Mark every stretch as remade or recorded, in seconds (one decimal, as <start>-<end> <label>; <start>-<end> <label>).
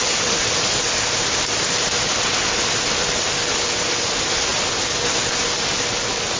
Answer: 0.0-4.5 remade; 4.5-5.7 recorded; 5.7-6.4 remade